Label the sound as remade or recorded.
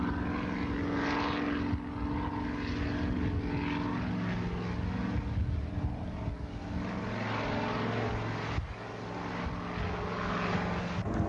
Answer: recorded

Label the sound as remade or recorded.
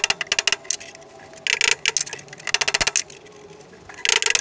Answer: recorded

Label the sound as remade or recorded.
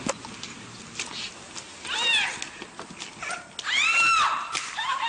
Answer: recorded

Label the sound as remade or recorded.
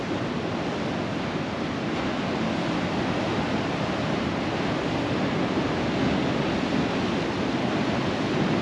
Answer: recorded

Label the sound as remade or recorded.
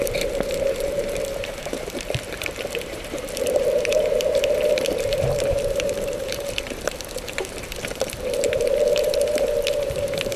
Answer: remade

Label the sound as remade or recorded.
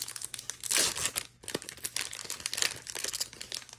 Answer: recorded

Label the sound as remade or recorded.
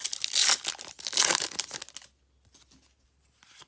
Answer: recorded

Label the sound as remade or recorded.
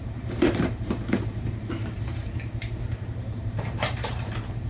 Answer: remade